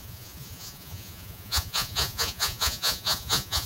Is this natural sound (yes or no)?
no